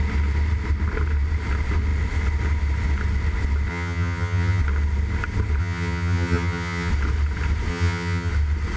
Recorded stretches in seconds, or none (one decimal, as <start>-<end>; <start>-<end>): 0.0-3.7; 4.6-5.6; 6.9-7.7; 8.3-8.8